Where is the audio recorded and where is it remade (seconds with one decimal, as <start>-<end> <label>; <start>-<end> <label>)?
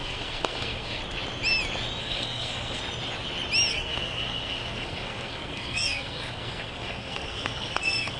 0.0-1.0 remade; 1.0-2.0 recorded; 2.0-2.8 remade; 2.8-3.7 recorded; 3.7-8.2 remade